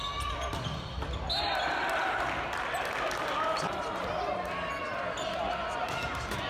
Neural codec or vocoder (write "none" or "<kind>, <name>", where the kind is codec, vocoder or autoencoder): none